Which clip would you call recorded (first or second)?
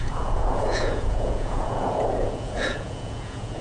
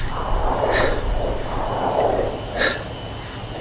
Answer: second